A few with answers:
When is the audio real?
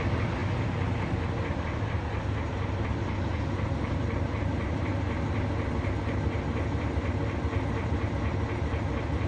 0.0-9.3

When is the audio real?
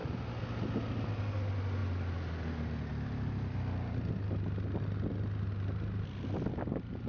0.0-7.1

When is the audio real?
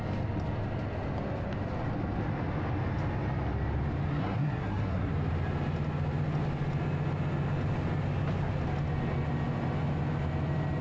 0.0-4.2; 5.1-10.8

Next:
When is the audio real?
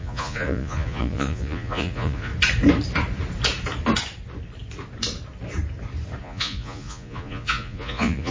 2.3-6.2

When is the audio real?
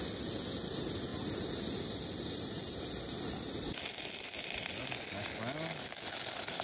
0.0-1.1; 2.8-6.6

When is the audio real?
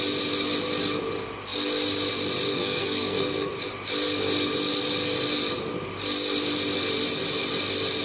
0.0-2.5; 3.5-8.0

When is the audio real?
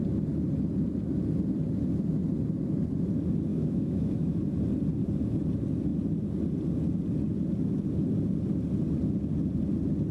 0.0-3.5; 4.4-10.1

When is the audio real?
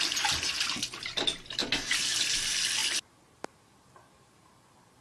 0.0-5.0